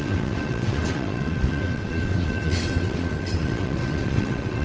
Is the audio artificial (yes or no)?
yes